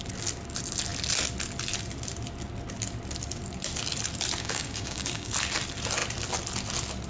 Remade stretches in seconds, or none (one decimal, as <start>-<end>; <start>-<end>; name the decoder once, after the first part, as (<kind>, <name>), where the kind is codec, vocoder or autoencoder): 4.4-5.3 (codec, DAC)